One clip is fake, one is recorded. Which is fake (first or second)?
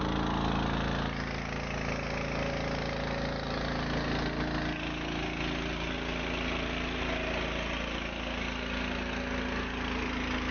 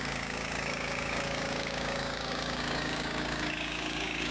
second